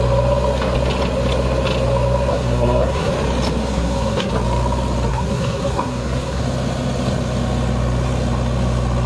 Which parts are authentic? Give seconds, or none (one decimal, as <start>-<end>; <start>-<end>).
0.0-2.3; 3.1-3.6; 4.3-5.1; 6.4-9.1